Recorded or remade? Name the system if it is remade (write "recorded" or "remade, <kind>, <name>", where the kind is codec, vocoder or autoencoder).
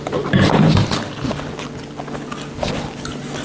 recorded